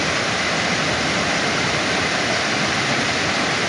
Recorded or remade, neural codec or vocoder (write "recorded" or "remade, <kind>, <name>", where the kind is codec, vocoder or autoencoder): recorded